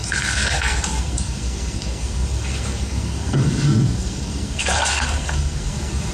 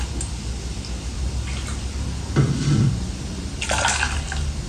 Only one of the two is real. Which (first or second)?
second